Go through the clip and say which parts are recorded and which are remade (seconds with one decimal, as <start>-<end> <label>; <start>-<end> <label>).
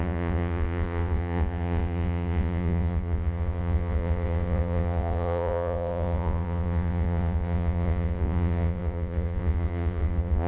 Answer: 0.0-10.5 remade